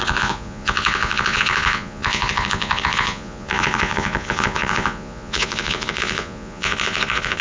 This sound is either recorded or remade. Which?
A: remade